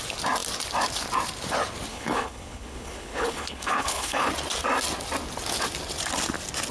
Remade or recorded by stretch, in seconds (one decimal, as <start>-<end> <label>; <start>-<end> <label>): 0.0-1.9 recorded; 1.9-4.3 remade; 4.3-6.7 recorded